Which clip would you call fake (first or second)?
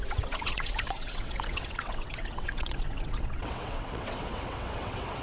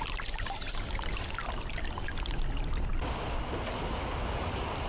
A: first